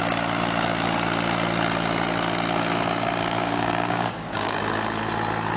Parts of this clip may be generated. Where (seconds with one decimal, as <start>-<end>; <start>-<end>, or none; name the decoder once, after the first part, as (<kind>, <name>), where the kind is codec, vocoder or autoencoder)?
3.2-4.6 (codec, DAC)